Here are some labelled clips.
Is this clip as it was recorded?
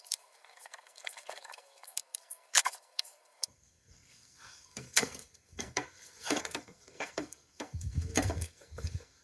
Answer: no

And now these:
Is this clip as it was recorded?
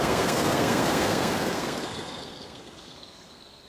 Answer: no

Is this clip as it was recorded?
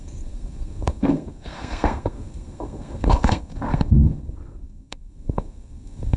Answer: no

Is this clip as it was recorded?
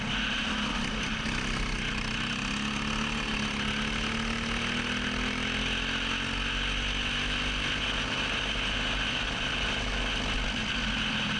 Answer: yes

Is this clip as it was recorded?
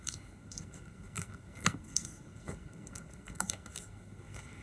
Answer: no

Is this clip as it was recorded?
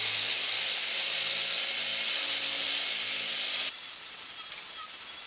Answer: yes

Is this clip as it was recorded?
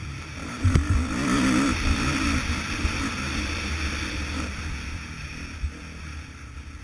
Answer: yes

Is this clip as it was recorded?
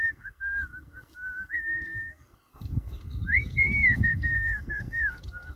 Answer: no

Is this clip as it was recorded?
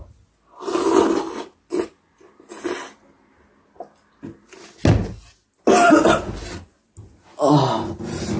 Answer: yes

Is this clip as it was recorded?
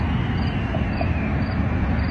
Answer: yes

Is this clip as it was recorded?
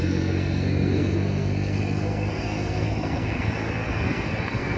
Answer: no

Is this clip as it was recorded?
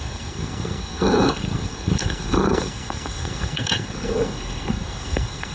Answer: no